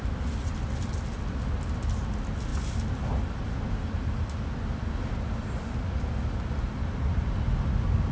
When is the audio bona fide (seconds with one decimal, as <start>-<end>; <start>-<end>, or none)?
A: 0.0-8.1